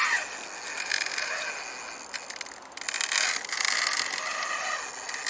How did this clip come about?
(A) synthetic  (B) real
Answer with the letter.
B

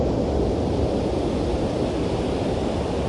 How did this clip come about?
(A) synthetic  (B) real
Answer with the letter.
B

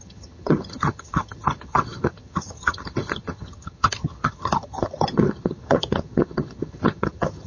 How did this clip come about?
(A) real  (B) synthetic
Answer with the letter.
B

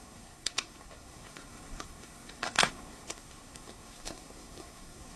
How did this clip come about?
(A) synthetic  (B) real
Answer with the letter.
A